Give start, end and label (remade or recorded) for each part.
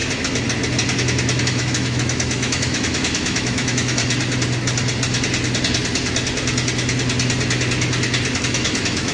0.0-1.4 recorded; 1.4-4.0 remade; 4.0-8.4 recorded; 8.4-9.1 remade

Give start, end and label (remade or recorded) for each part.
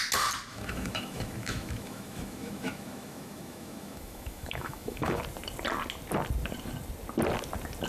0.0-0.5 recorded; 0.5-5.2 remade; 5.2-7.9 recorded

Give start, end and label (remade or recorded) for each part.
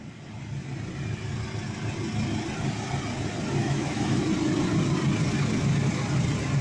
0.0-3.6 recorded; 3.6-4.2 remade; 4.2-6.6 recorded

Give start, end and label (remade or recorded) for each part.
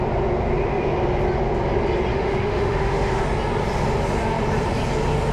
0.0-2.1 recorded; 2.1-3.2 remade; 3.2-5.3 recorded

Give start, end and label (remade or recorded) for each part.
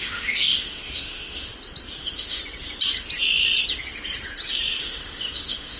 0.0-1.5 remade; 1.5-2.0 recorded; 2.0-2.4 remade; 2.4-4.8 recorded; 4.8-5.8 remade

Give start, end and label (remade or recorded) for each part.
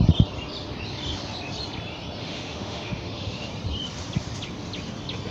0.0-2.2 recorded; 2.2-3.5 remade; 3.5-5.3 recorded